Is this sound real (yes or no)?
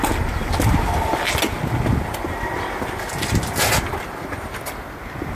yes